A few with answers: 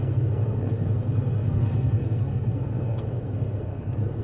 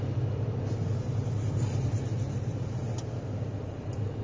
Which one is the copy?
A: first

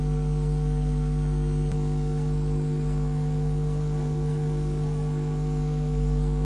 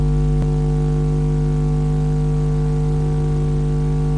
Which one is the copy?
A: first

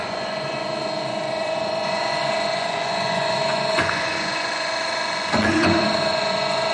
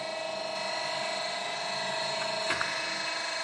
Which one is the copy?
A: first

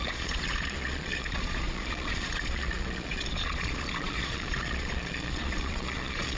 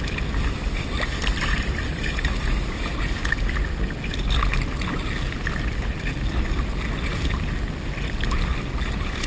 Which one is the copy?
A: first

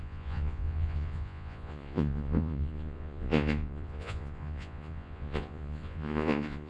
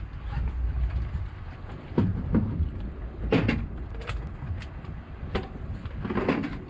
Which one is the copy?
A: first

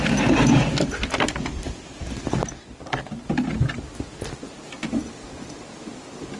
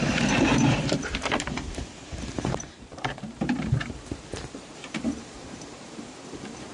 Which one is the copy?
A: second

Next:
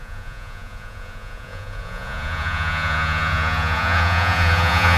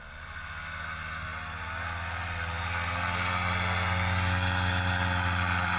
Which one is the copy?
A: first